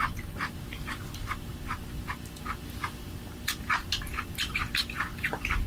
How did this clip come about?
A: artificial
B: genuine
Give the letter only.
A